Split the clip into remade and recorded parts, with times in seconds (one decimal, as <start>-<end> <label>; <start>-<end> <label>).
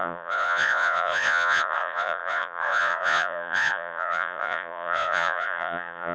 0.0-6.1 remade